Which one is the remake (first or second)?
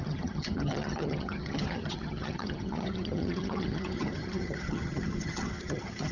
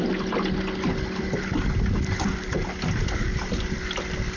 first